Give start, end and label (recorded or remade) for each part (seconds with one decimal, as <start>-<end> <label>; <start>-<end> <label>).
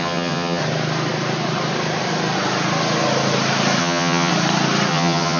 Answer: 0.0-0.6 remade; 0.6-3.8 recorded; 3.8-4.3 remade; 4.3-4.9 recorded; 4.9-5.4 remade